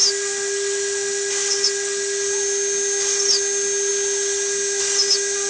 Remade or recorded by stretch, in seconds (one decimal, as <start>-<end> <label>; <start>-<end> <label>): 0.0-5.5 recorded